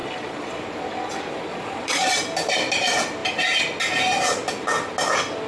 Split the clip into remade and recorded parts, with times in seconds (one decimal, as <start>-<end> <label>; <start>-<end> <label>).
0.0-0.6 remade; 0.6-1.5 recorded; 1.5-2.1 remade; 2.1-5.5 recorded